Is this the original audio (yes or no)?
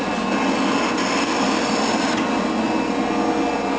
yes